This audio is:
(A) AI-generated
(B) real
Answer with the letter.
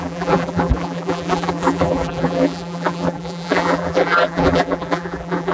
A